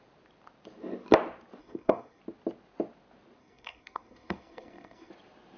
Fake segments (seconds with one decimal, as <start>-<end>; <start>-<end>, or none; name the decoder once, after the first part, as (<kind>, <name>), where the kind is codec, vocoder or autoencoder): 1.6-2.2 (codec, SNAC); 3.4-5.1